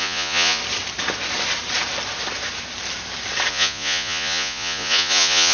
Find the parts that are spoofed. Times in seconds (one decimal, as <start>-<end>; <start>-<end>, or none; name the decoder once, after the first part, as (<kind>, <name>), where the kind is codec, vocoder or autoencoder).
0.0-0.6 (vocoder, Vocos); 3.5-5.5